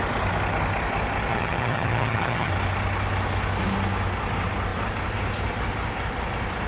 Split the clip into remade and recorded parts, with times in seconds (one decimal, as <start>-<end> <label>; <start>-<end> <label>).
0.0-1.3 recorded; 1.3-2.5 remade; 2.5-6.7 recorded